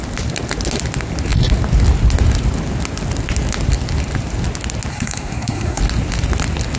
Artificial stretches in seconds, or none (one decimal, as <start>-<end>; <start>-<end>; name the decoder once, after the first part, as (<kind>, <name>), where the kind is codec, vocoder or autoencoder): 4.9-5.8 (codec, SNAC)